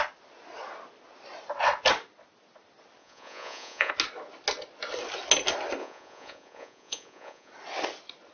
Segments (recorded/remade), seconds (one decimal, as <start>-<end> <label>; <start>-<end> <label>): 0.0-3.0 recorded; 3.0-3.9 remade; 3.9-5.8 recorded; 5.8-7.5 remade; 7.5-8.3 recorded